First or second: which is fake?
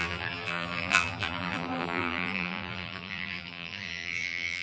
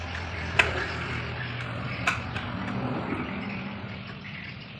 first